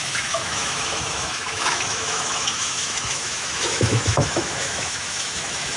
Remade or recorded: remade